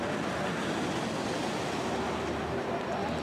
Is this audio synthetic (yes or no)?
no